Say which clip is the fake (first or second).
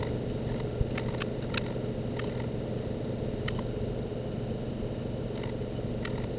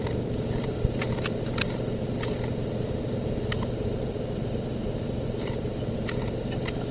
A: second